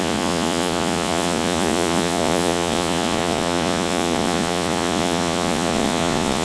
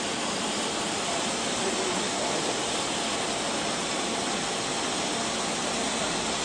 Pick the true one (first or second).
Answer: second